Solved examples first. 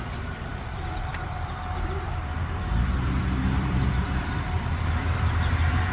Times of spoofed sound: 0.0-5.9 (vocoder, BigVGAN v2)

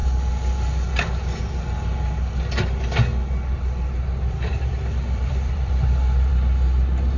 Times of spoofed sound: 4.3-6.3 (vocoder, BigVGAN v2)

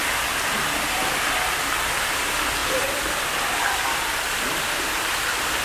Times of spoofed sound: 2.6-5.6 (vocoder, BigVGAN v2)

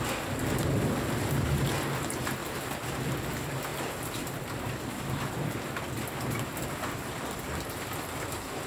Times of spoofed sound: 2.4-3.1 (vocoder, BigVGAN v2)

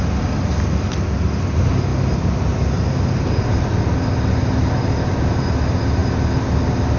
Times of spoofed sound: none